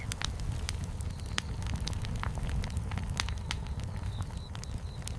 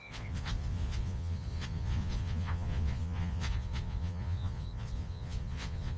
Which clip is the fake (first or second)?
second